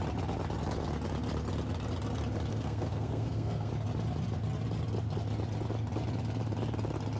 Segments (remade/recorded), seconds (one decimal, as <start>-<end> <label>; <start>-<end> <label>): 0.0-2.5 recorded; 2.5-3.7 remade; 3.7-7.2 recorded